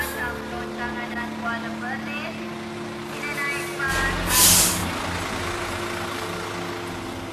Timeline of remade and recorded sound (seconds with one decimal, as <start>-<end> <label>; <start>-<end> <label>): 0.0-7.3 recorded